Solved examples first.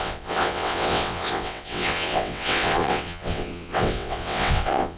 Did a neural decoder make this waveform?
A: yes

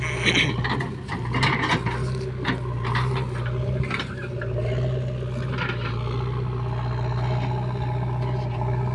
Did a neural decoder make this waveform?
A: no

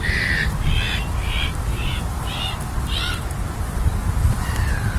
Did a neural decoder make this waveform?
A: no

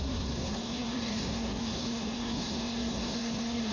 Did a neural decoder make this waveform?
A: yes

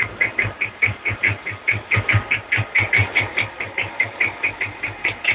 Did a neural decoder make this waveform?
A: no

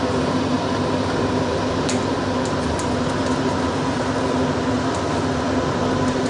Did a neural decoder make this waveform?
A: no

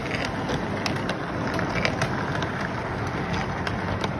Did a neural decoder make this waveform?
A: no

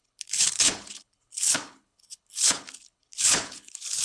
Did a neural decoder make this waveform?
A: yes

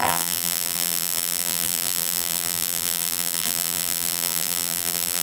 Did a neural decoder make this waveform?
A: yes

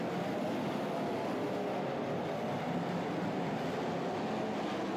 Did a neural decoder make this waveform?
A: no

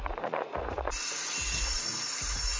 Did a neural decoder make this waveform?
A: yes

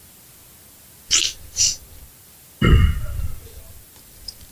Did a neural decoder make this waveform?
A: no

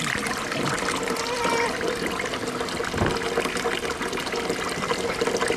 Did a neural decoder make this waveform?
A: no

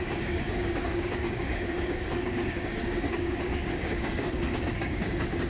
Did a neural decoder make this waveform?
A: yes